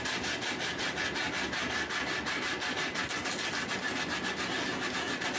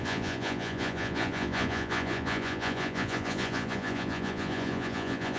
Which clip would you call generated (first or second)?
second